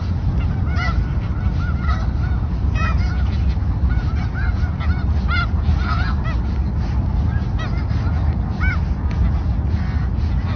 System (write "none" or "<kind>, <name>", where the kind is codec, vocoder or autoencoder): none